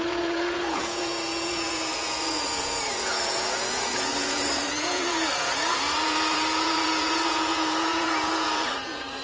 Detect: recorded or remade remade